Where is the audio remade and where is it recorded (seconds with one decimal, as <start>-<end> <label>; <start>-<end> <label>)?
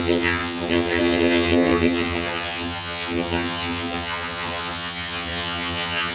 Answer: 0.0-6.1 remade